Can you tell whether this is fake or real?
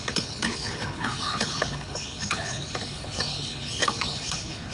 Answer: fake